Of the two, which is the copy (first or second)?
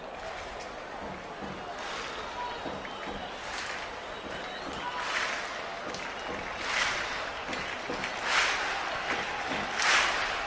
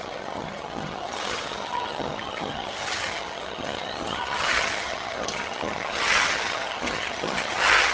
second